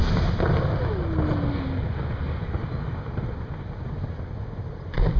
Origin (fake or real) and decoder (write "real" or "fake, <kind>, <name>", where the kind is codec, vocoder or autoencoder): real